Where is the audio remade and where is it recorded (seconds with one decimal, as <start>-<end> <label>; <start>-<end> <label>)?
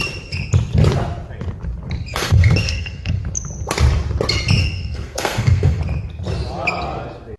0.0-2.1 recorded; 2.1-3.2 remade; 3.2-4.6 recorded; 4.6-5.8 remade; 5.8-7.4 recorded